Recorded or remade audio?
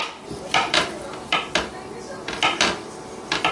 recorded